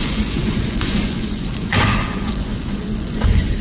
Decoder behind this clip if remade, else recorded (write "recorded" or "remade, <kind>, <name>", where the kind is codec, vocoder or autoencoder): remade, vocoder, Vocos